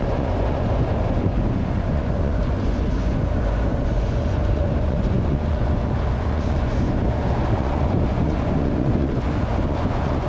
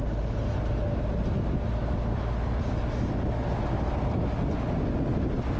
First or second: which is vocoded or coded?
first